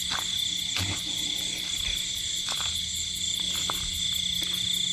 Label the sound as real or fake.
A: real